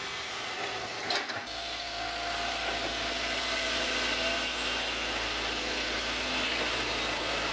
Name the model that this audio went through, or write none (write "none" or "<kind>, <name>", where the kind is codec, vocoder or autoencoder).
none